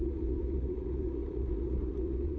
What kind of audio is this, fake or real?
fake